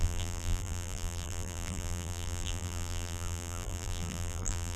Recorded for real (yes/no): no